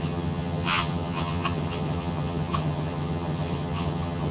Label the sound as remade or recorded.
remade